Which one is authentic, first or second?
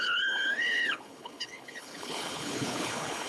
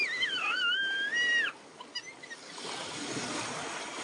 second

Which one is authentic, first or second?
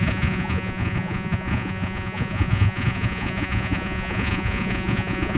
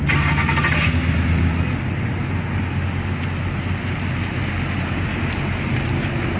second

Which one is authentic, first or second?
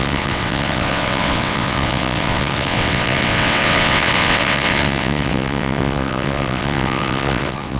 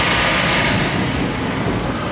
second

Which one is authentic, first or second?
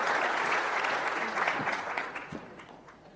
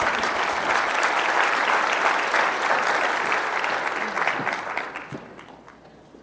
second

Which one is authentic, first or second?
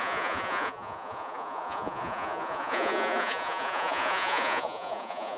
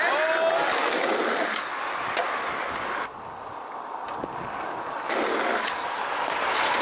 second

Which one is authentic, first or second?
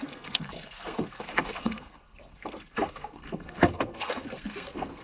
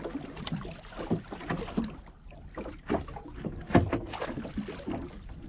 second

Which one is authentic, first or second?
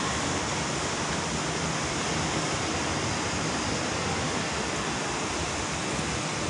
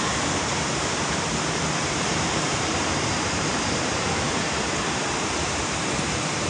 first